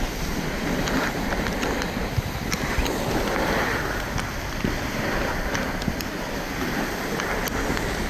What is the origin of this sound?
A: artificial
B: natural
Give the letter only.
B